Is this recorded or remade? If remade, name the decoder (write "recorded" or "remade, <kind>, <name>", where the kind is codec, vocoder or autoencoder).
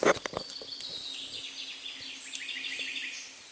recorded